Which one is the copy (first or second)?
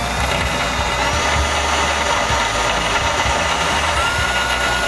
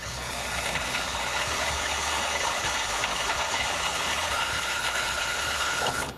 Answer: second